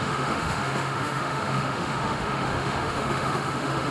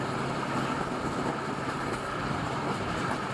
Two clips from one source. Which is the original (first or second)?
second